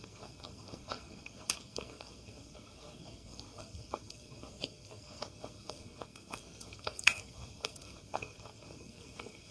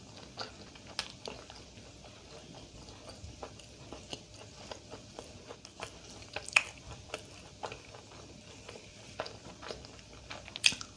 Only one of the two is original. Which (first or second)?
second